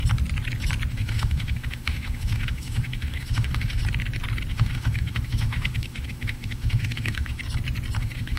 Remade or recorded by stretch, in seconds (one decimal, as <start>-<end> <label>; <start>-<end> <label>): 0.0-0.9 recorded; 0.9-3.8 remade; 3.8-4.5 recorded; 4.5-7.4 remade; 7.4-8.0 recorded; 8.0-8.4 remade